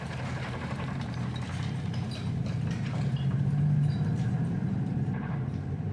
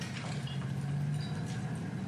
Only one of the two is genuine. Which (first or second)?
second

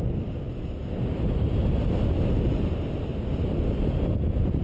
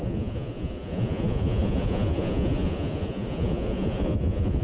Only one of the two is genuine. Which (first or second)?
first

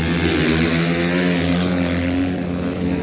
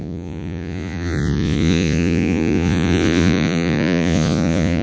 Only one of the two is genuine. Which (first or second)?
first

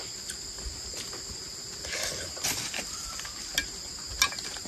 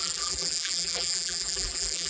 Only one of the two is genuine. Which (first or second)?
first